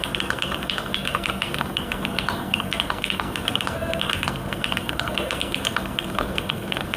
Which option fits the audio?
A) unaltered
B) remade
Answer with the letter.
B